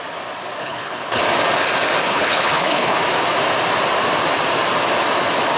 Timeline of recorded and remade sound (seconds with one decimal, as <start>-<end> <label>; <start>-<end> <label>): 0.0-0.6 recorded; 0.6-1.2 remade; 1.2-2.1 recorded; 2.1-3.0 remade; 3.0-5.6 recorded

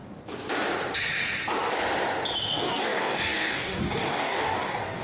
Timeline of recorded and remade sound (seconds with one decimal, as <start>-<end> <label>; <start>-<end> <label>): 0.0-2.5 recorded; 2.5-5.0 remade